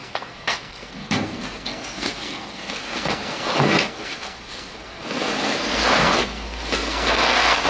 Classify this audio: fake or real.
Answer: fake